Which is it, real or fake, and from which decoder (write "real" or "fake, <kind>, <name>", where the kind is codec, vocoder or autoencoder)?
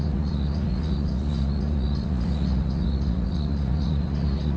fake, vocoder, Vocos